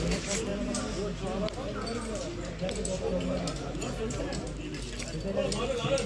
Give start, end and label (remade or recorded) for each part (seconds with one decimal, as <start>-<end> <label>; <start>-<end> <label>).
0.0-6.1 recorded